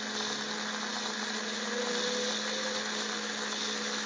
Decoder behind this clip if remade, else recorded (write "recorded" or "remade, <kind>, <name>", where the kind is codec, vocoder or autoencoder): recorded